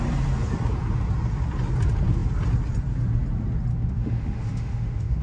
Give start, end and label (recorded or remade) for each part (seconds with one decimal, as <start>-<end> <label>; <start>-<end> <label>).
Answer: 0.0-3.7 recorded; 3.7-5.2 remade